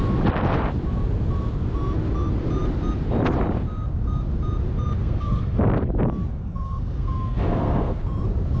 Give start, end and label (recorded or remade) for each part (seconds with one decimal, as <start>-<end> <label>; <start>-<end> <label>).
0.0-5.0 recorded; 5.0-5.6 remade; 5.6-6.3 recorded; 6.3-8.0 remade; 8.0-8.6 recorded